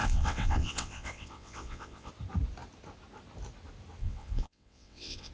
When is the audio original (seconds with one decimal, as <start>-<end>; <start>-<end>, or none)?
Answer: 2.1-4.0